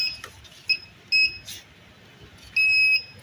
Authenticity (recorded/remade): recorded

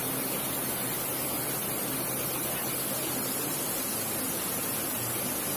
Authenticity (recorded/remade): recorded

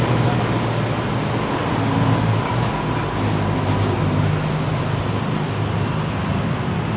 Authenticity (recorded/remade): recorded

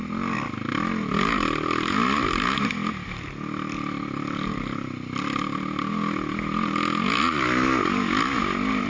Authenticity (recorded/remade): recorded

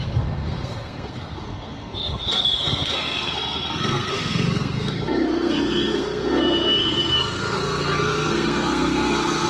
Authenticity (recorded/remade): remade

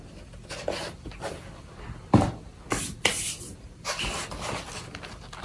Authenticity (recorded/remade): remade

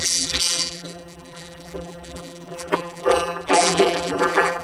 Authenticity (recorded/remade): remade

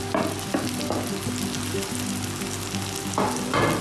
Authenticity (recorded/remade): recorded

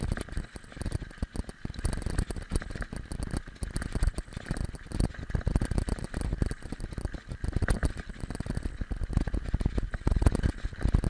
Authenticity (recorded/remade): recorded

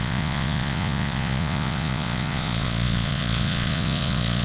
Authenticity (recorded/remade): remade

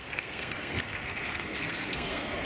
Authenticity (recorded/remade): remade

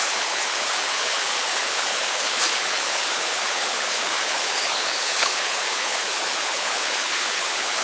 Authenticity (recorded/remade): remade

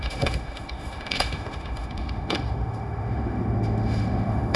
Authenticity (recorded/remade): remade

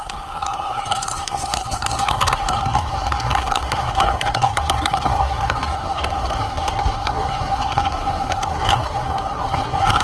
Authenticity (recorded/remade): remade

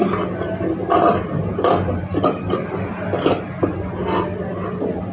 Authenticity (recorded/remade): recorded